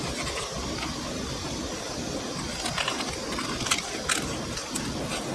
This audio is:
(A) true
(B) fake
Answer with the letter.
A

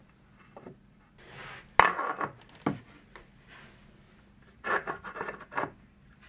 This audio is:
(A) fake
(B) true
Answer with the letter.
B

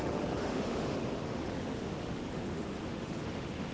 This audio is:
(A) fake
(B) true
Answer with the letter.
A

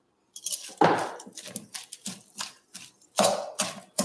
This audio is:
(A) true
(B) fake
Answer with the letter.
A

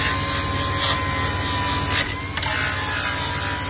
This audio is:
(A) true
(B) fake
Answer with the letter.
A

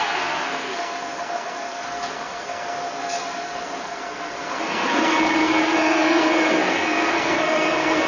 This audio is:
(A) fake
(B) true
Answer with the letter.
A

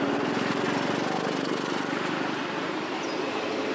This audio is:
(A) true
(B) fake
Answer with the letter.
A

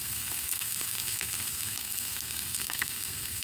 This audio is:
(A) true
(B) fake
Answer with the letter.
B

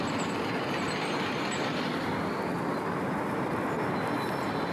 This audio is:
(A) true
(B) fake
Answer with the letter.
A